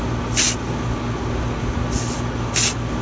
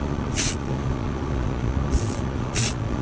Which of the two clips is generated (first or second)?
second